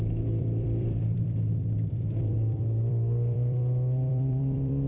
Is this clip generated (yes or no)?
yes